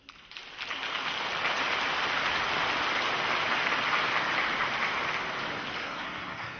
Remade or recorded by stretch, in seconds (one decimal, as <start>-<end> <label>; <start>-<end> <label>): 0.0-5.8 recorded; 5.8-6.6 remade